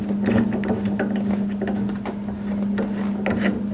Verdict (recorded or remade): recorded